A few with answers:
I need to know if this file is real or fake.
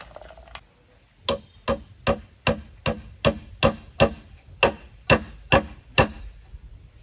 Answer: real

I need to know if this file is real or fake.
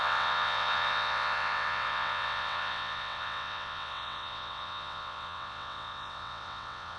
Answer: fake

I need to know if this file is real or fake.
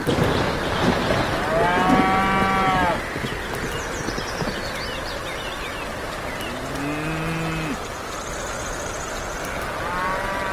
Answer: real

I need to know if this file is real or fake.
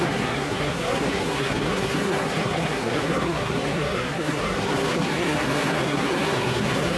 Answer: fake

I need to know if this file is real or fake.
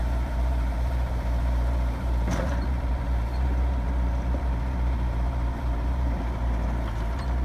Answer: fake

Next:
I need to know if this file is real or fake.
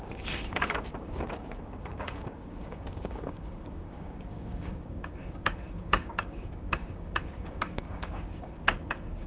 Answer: fake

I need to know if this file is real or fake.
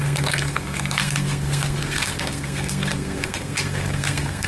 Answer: fake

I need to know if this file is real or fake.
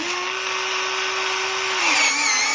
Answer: real